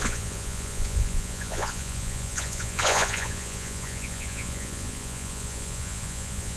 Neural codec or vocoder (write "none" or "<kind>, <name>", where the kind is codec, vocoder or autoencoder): vocoder, Vocos